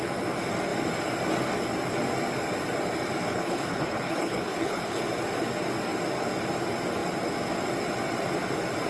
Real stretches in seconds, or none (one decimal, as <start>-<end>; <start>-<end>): 0.0-3.2; 5.0-8.9